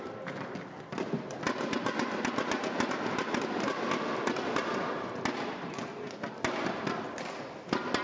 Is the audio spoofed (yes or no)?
no